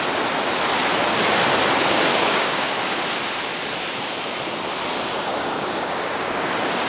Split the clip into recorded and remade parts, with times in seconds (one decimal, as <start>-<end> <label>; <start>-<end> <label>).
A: 0.0-2.1 recorded; 2.1-3.0 remade; 3.0-5.1 recorded; 5.1-6.5 remade; 6.5-6.9 recorded